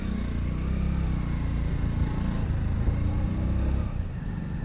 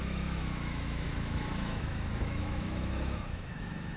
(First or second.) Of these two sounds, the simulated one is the second